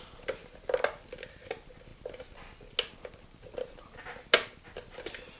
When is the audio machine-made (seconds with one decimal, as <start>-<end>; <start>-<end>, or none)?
none